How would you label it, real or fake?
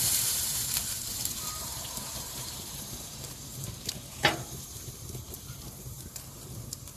fake